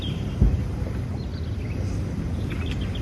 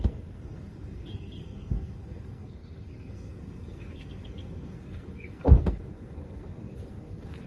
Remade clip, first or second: second